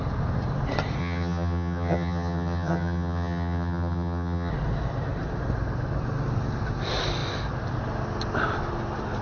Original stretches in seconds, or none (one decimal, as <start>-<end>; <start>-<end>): 0.0-1.0; 4.5-9.2